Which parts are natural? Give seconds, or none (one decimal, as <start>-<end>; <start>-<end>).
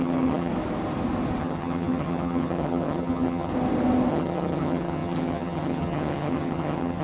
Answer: 0.5-1.4; 3.5-4.1